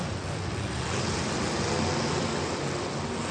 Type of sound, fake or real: real